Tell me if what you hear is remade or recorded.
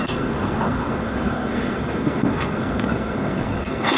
remade